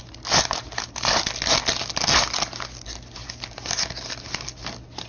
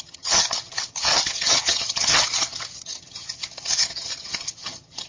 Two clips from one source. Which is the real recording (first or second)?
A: first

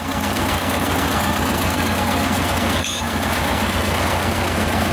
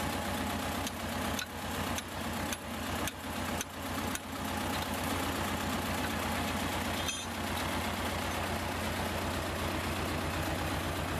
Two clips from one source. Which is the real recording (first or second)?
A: second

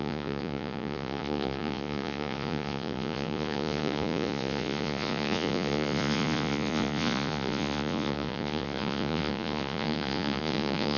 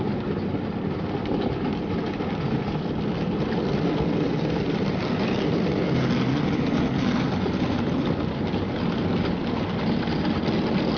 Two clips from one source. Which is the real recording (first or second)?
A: second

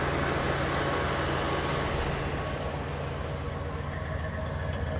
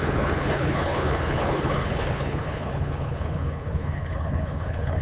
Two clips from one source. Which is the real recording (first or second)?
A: first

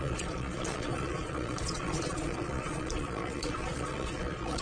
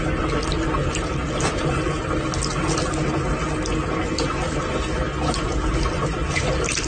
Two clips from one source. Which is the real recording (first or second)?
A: second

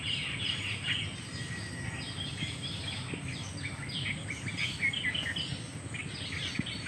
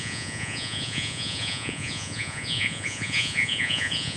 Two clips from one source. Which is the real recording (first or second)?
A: first